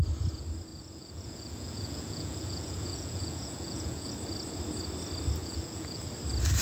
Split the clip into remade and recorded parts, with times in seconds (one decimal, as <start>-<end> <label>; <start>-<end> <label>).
0.0-0.7 recorded; 0.7-4.1 remade; 4.1-5.4 recorded; 5.4-6.1 remade; 6.1-6.6 recorded